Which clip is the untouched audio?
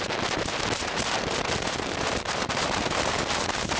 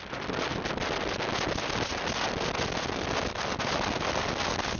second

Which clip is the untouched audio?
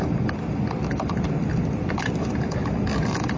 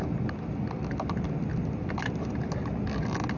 second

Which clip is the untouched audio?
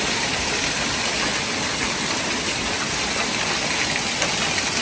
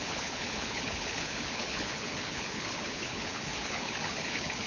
first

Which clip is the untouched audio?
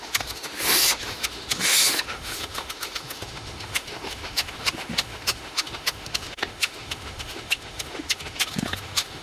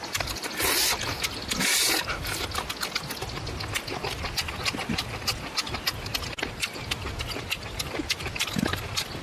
second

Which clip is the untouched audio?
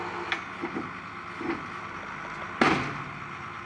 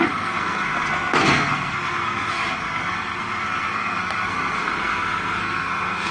first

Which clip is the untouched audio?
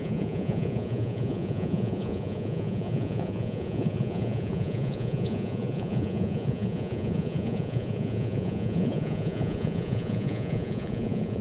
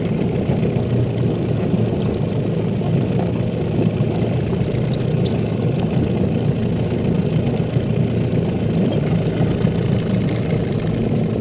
second